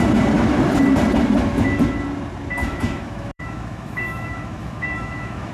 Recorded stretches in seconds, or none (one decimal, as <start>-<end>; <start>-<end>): 0.0-2.6